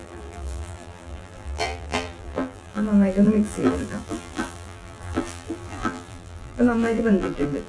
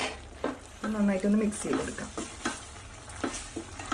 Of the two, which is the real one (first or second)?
second